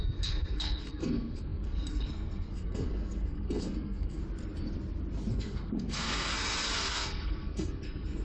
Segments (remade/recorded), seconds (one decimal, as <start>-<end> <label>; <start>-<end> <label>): 0.0-4.2 remade; 4.2-5.3 recorded; 5.3-6.3 remade; 6.3-6.9 recorded; 6.9-8.2 remade